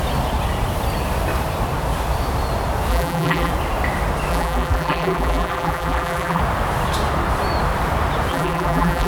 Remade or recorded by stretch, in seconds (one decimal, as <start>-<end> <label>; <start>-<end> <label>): 0.0-2.9 recorded; 2.9-3.5 remade; 3.5-4.3 recorded; 4.3-6.4 remade; 6.4-8.3 recorded; 8.3-9.1 remade